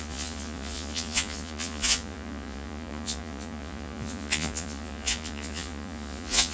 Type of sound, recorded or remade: remade